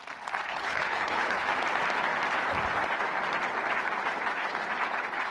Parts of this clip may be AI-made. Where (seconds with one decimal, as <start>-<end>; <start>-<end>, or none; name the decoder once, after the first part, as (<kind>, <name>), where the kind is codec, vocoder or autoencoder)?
0.5-1.5 (codec, HILCodec)